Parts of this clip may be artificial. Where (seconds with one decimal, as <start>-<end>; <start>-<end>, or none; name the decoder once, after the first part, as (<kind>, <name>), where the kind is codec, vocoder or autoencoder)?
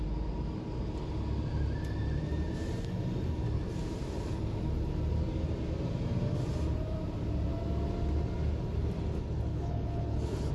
9.5-10.5 (codec, HILCodec)